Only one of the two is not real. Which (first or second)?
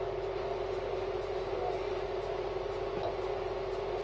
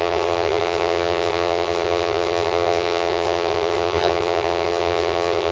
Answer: second